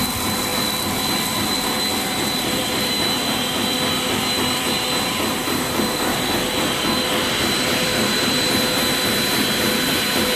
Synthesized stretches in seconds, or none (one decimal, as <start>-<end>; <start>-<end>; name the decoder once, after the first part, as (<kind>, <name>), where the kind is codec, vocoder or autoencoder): 0.0-0.5 (vocoder, BigVGAN v2); 2.0-10.4